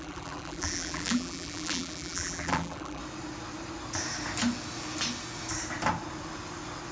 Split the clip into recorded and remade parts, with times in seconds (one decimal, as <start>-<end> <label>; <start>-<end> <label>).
0.0-3.0 remade; 3.0-6.9 recorded